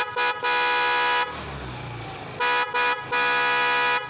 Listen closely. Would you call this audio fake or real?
real